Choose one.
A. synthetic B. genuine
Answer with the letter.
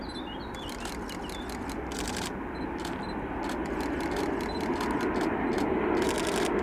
B